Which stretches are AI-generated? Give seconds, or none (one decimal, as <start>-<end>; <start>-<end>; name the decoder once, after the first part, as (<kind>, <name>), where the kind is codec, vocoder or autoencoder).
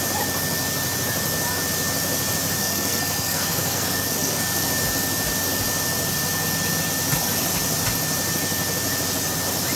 2.6-4.7 (codec, SNAC)